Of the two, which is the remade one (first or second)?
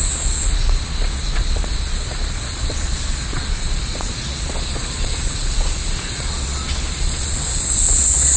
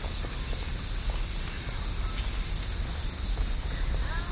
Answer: first